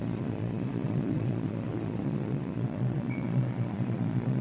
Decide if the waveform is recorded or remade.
remade